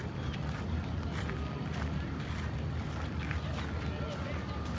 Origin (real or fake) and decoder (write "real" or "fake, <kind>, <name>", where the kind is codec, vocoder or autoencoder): real